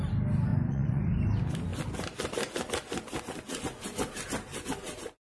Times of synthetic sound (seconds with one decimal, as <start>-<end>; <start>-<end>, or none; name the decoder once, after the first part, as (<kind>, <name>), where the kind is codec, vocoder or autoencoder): 0.5-1.0 (vocoder, Vocos)